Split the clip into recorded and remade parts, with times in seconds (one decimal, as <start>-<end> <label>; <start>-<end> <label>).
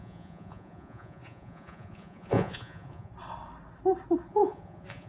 0.0-3.1 remade; 3.1-4.3 recorded; 4.3-5.1 remade